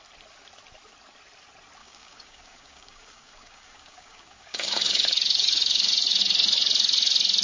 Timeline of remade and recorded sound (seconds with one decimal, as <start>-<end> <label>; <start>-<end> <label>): 0.0-1.8 recorded; 1.8-6.2 remade; 6.2-7.4 recorded